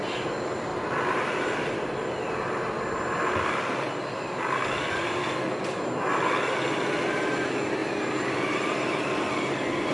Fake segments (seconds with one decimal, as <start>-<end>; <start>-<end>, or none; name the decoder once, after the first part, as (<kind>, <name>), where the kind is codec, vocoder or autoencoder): 7.8-9.2 (vocoder, BigVGAN v2)